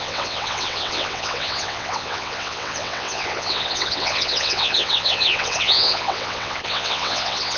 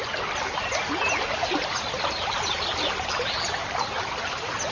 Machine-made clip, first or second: first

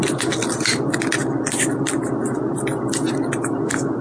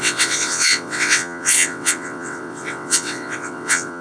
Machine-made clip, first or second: second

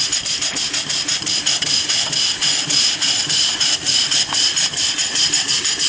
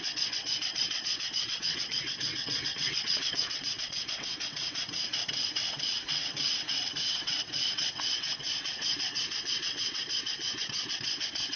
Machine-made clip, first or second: second